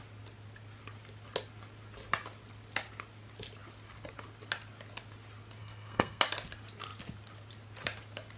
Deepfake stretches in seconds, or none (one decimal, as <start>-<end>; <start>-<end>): 5.6-6.2